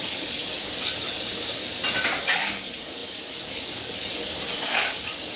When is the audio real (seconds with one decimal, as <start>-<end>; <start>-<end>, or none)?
1.6-2.2